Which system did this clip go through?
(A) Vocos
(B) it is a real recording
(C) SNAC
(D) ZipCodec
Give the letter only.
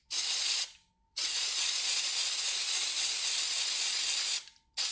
B